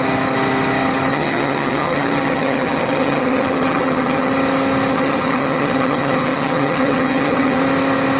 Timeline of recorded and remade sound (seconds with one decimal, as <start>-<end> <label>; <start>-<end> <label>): 0.0-1.1 recorded; 1.1-4.3 remade; 4.3-4.9 recorded; 4.9-7.6 remade; 7.6-8.2 recorded